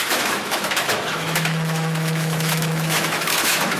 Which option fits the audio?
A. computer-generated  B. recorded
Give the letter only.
A